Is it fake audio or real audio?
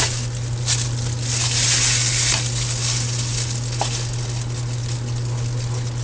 real